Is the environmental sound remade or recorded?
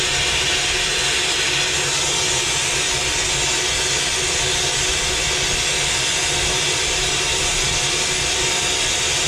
recorded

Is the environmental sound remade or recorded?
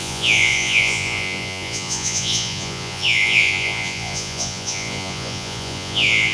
remade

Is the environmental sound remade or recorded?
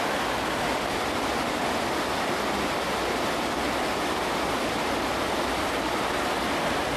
recorded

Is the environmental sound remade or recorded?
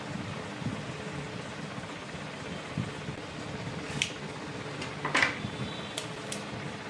recorded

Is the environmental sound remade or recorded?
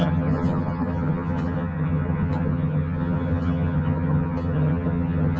remade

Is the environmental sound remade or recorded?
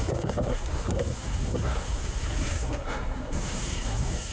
remade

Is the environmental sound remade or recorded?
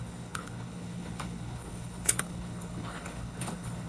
remade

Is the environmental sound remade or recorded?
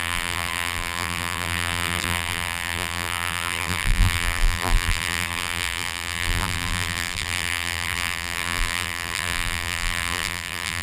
remade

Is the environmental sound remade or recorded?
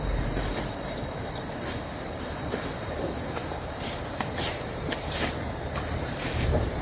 remade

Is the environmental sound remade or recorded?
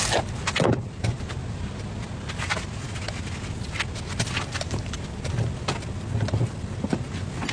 recorded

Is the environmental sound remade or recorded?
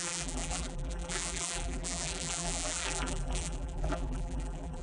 remade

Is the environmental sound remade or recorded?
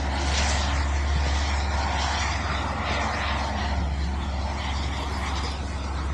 recorded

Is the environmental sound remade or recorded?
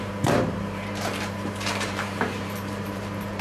remade